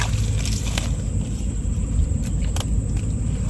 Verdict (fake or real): real